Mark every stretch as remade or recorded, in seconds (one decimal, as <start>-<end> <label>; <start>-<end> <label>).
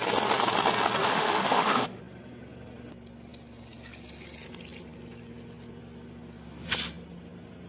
0.0-1.0 recorded; 1.0-2.0 remade; 2.0-7.7 recorded